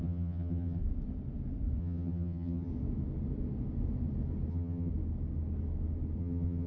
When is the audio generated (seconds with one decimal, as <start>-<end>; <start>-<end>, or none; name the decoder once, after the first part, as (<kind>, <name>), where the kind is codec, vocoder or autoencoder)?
0.0-0.8 (vocoder, HiFi-GAN); 1.8-2.7; 4.5-4.9; 6.2-6.7